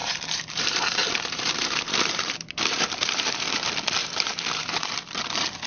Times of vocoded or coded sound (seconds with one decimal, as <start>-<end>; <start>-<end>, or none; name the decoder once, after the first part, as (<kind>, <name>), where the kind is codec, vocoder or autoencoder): 0.0-3.4 (vocoder, BigVGAN v2); 4.0-4.9

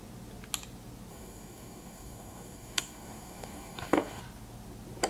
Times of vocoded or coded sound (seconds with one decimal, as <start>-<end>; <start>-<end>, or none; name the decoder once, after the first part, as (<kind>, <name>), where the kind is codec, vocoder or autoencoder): 1.1-4.2 (codec, DAC)

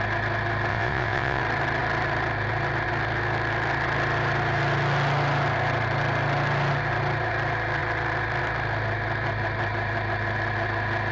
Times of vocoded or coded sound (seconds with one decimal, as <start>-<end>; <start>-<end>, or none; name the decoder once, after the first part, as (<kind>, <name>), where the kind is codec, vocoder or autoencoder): 0.7-1.4 (vocoder, WaveNeXt)

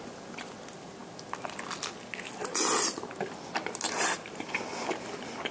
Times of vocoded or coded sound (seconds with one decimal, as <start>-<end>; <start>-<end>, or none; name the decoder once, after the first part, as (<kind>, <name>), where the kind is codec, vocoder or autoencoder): none

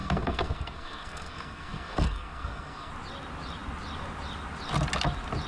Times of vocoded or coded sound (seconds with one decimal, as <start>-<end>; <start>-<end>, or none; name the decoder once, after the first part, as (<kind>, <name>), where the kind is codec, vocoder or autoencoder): 0.0-2.9 (codec, SNAC)

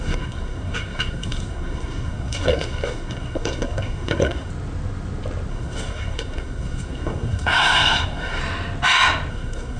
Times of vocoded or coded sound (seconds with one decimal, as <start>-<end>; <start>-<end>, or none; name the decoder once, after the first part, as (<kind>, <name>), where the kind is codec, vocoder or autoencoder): 0.0-4.5 (codec, SNAC); 5.5-8.4; 9.3-9.8

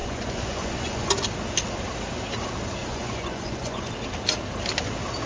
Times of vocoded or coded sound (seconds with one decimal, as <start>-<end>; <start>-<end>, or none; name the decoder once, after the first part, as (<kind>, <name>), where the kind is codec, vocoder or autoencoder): 0.0-1.1 (vocoder, Vocos); 2.8-3.9

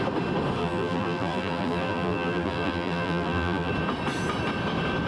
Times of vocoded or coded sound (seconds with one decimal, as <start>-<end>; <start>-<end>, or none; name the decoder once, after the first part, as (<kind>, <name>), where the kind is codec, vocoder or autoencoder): 0.6-3.7 (vocoder, BigVGAN v2)